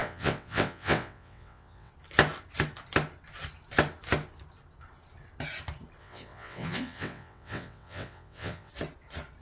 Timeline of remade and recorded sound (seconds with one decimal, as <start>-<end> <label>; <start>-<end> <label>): 0.0-1.9 remade; 1.9-6.0 recorded; 6.0-8.7 remade; 8.7-9.4 recorded